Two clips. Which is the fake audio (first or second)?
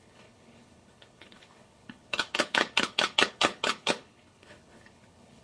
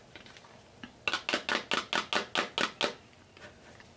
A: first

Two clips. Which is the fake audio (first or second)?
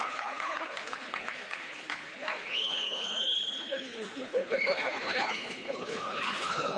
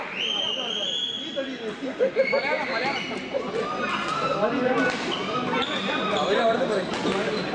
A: first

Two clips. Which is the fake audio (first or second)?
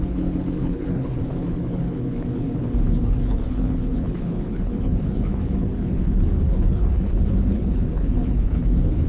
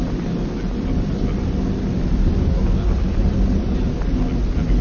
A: first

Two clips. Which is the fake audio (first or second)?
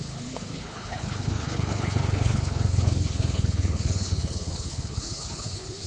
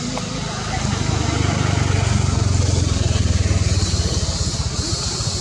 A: first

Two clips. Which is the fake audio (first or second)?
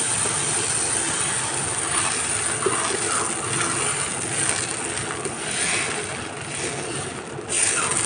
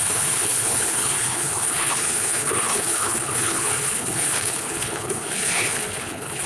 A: second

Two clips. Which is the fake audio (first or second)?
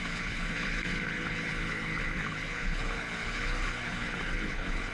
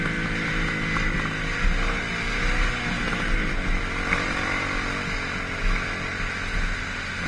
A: first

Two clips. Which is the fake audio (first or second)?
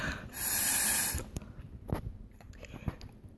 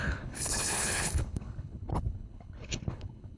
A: second